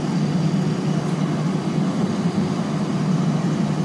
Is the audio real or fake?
real